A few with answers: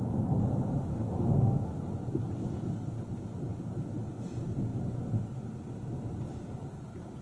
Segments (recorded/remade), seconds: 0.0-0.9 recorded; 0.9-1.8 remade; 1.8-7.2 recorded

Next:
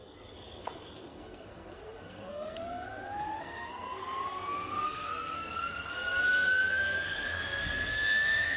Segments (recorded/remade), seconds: 0.0-8.6 remade

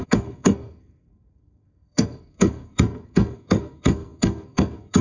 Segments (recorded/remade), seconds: 0.0-5.0 remade

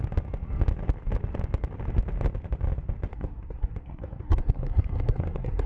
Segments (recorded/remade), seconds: 0.0-3.1 recorded; 3.1-5.7 remade

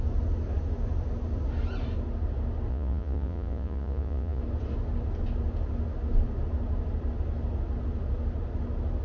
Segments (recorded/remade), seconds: 0.0-2.7 recorded; 2.7-4.4 remade; 4.4-9.0 recorded

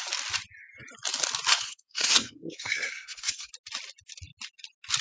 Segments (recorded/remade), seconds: 0.0-1.5 recorded; 1.5-3.5 remade; 3.5-5.0 recorded

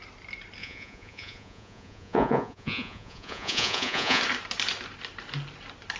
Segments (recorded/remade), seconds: 0.0-0.6 recorded; 0.6-4.2 remade; 4.2-6.0 recorded

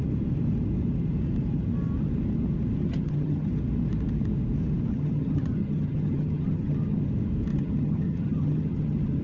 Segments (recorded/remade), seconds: 0.0-2.8 recorded; 2.8-3.5 remade; 3.5-4.9 recorded; 4.9-7.1 remade; 7.1-7.5 recorded; 7.5-9.2 remade